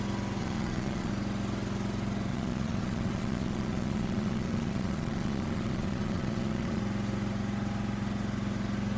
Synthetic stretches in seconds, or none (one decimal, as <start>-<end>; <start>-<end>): 0.4-1.1; 2.3-6.8